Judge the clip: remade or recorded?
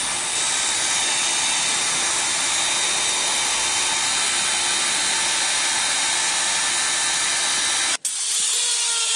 recorded